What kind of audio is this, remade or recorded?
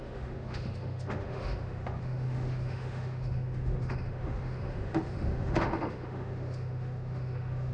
remade